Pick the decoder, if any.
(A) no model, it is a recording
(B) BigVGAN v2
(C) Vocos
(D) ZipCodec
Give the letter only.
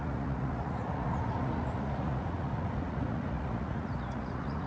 C